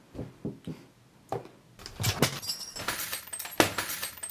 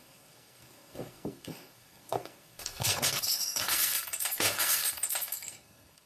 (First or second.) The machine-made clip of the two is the second